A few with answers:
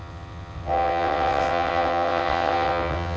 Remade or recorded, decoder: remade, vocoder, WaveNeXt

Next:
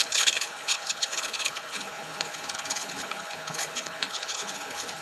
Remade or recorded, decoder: remade, codec, HILCodec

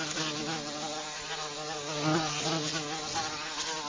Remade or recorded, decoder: recorded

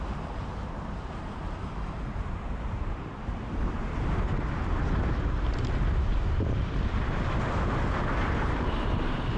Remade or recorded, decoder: remade, vocoder, BigVGAN v2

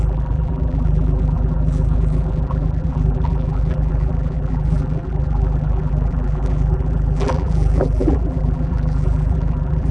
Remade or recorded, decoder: remade, vocoder, BigVGAN v2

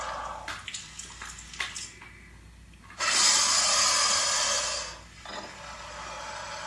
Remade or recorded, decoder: recorded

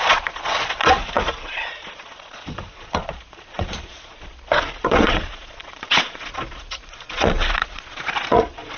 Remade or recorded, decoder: remade, vocoder, Vocos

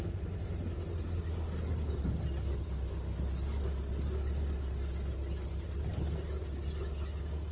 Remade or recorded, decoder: recorded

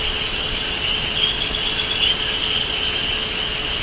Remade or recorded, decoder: recorded